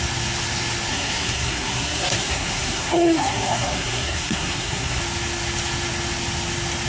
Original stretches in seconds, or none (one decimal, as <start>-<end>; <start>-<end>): 0.0-0.9; 5.0-6.9